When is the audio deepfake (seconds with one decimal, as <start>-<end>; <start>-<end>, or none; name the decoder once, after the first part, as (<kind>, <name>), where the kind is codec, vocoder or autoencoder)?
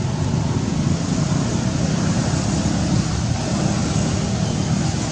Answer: 0.7-2.5 (vocoder, BigVGAN v2)